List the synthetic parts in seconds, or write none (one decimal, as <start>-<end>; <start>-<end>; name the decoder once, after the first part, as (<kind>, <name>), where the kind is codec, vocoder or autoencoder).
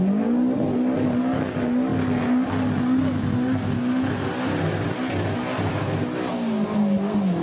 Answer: none